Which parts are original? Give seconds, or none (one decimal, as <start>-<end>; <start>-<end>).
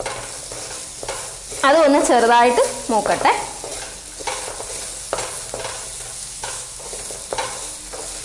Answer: 0.0-6.2; 6.8-8.2